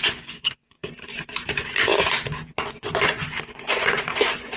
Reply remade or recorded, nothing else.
remade